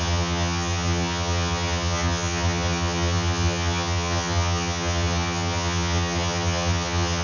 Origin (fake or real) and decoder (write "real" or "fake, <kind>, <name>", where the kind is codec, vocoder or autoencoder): fake, vocoder, HiFi-GAN